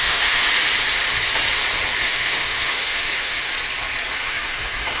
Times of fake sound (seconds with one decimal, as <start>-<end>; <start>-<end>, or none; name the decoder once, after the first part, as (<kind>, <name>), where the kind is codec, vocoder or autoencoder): 0.0-0.4 (autoencoder, DAC-VAE); 2.0-3.5; 4.1-5.0